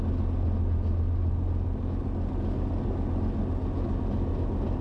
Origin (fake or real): real